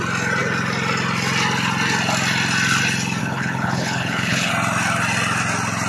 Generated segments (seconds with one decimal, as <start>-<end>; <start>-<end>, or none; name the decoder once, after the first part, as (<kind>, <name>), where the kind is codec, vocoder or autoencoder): 3.2-4.5 (codec, HILCodec)